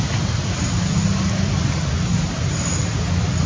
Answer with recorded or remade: recorded